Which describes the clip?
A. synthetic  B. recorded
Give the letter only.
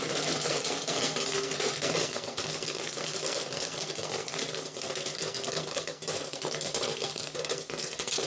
A